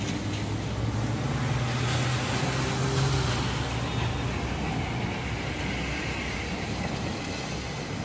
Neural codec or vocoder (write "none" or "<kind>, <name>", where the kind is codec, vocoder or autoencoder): none